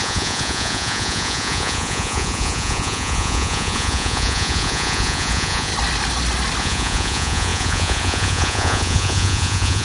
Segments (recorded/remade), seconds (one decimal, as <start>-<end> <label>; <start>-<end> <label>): 0.0-5.7 remade; 5.7-6.6 recorded; 6.6-9.8 remade